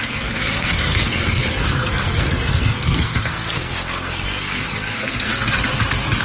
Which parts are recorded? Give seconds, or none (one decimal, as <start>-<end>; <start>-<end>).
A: 5.3-6.2